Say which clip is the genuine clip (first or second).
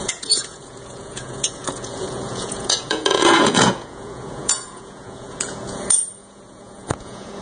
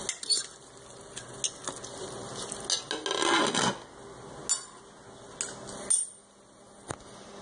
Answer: second